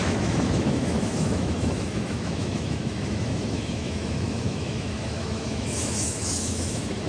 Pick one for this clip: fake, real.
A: fake